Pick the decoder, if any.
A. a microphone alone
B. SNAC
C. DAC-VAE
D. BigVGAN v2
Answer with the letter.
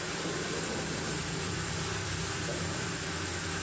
D